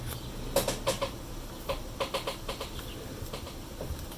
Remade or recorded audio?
remade